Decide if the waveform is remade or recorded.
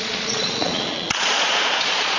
remade